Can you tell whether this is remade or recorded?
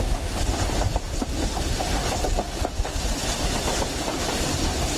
recorded